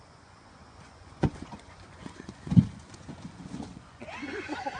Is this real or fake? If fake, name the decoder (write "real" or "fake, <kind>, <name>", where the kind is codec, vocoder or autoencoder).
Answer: fake, vocoder, Vocos